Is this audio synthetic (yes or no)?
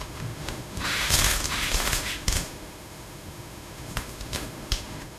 yes